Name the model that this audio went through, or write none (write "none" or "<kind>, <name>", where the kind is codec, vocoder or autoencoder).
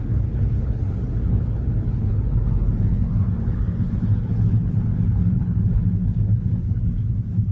codec, HILCodec